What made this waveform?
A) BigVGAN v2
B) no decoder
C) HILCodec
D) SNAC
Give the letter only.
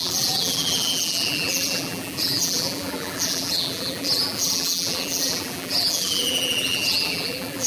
A